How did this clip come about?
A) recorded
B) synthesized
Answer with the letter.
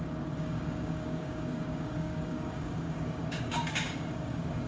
B